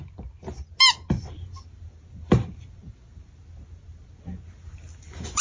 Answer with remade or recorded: recorded